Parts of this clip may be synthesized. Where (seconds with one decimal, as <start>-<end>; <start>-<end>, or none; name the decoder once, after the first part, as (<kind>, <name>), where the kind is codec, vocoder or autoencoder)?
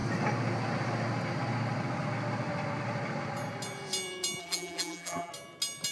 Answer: 4.4-5.3 (vocoder, BigVGAN v2)